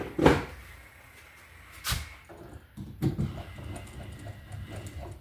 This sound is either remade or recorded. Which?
recorded